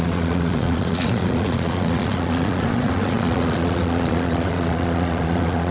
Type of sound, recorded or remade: remade